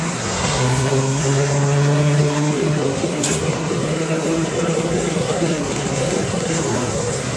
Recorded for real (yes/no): no